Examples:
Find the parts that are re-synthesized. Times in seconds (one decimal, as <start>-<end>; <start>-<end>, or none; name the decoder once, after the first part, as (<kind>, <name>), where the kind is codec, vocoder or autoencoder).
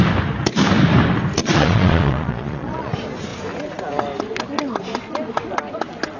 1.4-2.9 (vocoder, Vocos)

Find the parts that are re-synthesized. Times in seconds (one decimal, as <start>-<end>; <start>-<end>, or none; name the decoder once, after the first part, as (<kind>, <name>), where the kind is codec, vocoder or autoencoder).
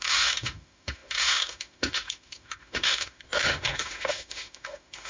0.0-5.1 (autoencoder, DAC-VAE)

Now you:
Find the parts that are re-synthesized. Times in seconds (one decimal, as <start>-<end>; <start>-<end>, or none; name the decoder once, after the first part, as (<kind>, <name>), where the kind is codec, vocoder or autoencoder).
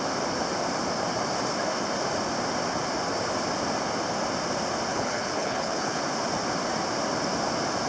4.9-6.0 (codec, HILCodec)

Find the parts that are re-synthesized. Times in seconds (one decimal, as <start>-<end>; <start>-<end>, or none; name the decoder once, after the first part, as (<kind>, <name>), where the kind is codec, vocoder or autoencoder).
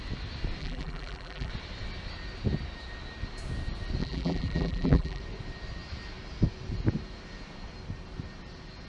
0.6-1.5 (vocoder, BigVGAN v2); 4.0-5.2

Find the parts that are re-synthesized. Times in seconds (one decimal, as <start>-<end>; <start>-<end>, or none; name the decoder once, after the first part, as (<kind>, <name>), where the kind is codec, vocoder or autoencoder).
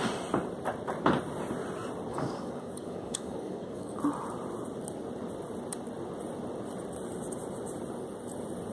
2.1-4.0 (codec, DAC)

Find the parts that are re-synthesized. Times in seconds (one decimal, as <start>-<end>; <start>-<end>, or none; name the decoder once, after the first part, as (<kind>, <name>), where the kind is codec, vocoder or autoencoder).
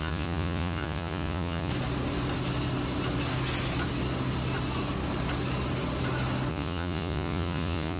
0.0-1.7 (vocoder, Vocos); 6.5-8.0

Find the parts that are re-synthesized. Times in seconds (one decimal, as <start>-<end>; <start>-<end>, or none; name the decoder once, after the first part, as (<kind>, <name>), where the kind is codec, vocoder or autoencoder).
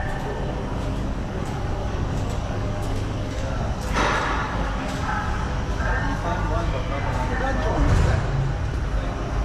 0.7-3.6 (codec, DAC); 4.4-6.9